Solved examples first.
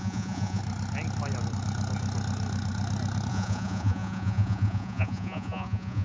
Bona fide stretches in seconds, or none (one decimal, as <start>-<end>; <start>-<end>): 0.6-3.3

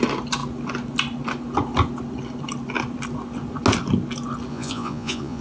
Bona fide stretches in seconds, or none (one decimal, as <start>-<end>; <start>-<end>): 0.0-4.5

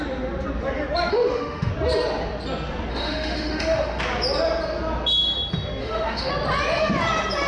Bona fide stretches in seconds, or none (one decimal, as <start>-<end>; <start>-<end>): 0.0-1.1; 1.7-2.9; 4.0-5.8; 6.3-7.5

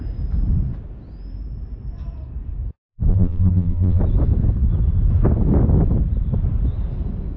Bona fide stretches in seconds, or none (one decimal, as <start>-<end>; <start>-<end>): 0.0-3.1; 4.0-7.4